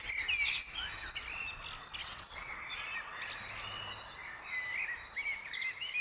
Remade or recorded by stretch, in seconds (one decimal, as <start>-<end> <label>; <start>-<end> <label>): 0.0-2.0 recorded; 2.0-2.6 remade; 2.6-6.0 recorded